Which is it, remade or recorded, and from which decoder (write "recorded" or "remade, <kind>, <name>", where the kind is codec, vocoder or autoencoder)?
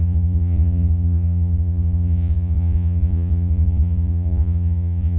remade, vocoder, Vocos